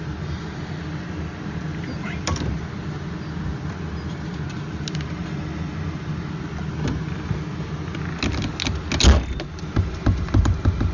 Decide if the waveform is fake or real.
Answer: real